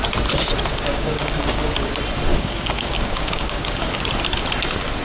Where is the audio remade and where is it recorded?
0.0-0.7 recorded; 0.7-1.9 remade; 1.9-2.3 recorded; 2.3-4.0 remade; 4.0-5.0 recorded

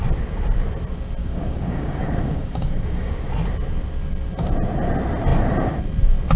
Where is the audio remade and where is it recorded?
0.0-1.2 recorded; 1.2-3.1 remade; 3.1-6.4 recorded

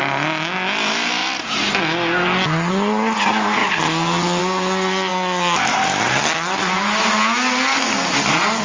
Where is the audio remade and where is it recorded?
0.0-8.6 recorded

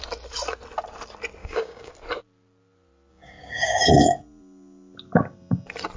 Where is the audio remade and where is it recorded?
0.0-1.4 recorded; 1.4-1.9 remade; 1.9-3.1 recorded; 3.1-3.9 remade; 3.9-6.0 recorded

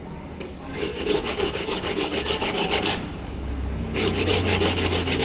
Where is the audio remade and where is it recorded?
0.0-4.5 remade; 4.5-5.2 recorded

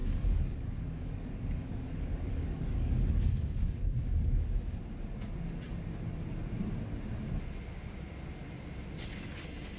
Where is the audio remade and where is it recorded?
0.0-4.5 remade; 4.5-9.8 recorded